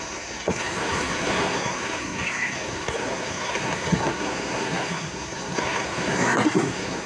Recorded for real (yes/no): no